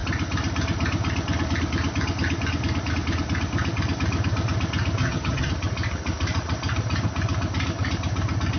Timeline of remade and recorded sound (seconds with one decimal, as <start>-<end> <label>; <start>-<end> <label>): 0.0-5.0 recorded; 5.0-5.5 remade; 5.5-8.6 recorded